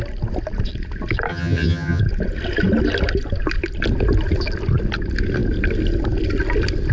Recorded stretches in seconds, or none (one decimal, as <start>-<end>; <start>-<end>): 0.0-1.3; 2.0-6.9